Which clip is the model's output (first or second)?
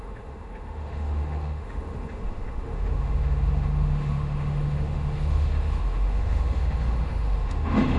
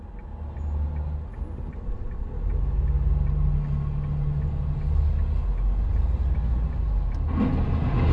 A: first